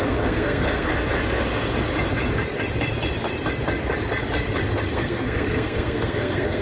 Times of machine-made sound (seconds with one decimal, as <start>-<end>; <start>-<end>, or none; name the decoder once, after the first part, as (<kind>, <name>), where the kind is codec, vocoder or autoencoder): 0.0-0.9 (codec, SNAC); 4.9-6.6

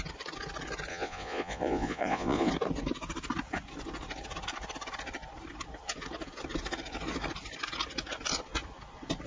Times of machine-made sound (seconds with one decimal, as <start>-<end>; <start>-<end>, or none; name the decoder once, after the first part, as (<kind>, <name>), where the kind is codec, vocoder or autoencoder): 0.9-2.5 (vocoder, Vocos)

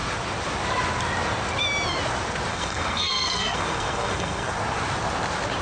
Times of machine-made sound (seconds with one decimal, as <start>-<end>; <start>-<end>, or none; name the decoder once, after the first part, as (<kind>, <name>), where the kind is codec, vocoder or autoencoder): 2.5-4.5 (codec, SNAC)

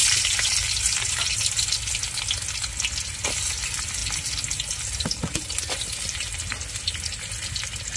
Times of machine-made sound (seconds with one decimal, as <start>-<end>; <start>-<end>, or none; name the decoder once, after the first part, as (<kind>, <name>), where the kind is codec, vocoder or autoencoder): none

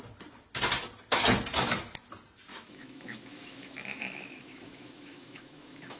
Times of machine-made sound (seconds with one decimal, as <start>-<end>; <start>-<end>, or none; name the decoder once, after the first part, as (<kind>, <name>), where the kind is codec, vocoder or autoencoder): 2.5-6.0 (autoencoder, DAC-VAE)

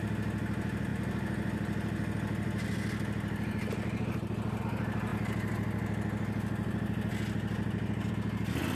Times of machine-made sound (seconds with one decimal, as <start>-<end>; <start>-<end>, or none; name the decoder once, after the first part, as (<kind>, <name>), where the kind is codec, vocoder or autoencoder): none

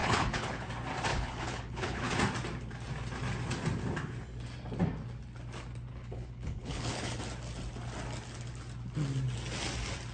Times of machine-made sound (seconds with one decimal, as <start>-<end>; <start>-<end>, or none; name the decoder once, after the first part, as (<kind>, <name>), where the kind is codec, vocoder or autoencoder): 0.0-0.7 (codec, HILCodec); 1.1-2.2; 5.9-7.2